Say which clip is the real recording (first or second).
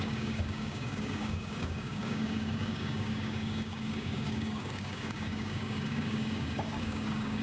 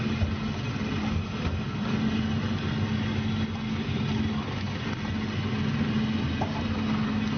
second